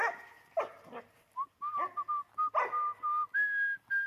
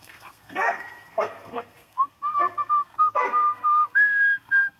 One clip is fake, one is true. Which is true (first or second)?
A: first